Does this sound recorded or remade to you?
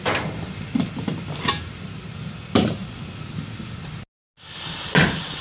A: recorded